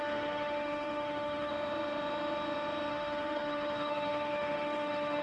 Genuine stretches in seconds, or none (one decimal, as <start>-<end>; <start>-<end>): 1.5-2.9